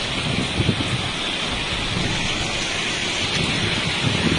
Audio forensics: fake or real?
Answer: real